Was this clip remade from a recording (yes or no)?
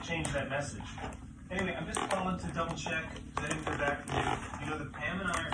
no